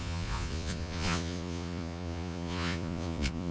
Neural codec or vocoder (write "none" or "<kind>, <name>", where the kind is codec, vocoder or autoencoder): vocoder, Vocos